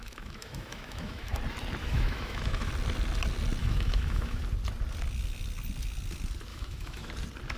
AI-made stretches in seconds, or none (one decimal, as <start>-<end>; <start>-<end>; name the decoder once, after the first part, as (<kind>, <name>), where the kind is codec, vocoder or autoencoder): 0.0-1.4 (autoencoder, DAC-VAE); 1.8-2.7; 3.6-4.4; 6.5-7.1